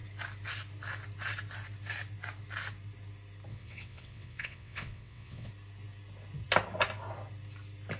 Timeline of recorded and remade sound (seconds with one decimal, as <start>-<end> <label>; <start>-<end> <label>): 0.0-3.5 recorded; 3.5-5.5 remade; 5.5-8.0 recorded